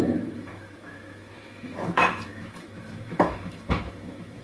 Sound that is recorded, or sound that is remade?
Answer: remade